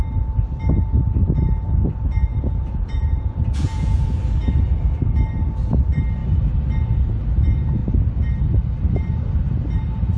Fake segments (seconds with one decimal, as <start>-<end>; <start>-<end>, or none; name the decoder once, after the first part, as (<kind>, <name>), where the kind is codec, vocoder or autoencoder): 2.3-4.2 (vocoder, Vocos)